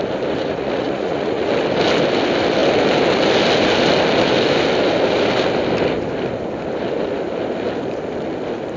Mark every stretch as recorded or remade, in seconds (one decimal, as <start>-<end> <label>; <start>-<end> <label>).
0.0-0.4 recorded; 0.4-1.4 remade; 1.4-8.8 recorded